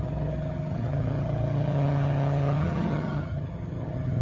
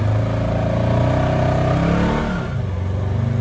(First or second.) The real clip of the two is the second